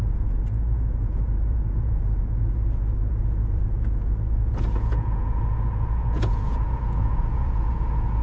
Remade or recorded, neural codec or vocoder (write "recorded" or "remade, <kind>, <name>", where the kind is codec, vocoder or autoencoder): remade, vocoder, Vocos